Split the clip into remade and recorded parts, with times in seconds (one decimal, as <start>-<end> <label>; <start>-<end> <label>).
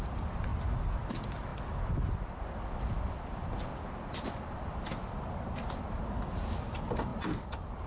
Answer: 0.0-0.5 remade; 0.5-1.0 recorded; 1.0-3.7 remade; 3.7-4.2 recorded; 4.2-7.9 remade